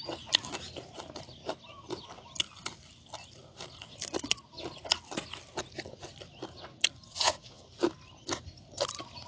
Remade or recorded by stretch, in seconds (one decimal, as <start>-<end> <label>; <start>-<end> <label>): 0.0-7.1 recorded; 7.1-7.6 remade; 7.6-9.3 recorded